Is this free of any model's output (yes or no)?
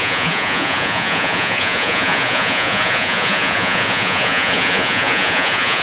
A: no